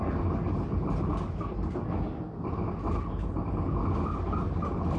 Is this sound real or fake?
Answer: real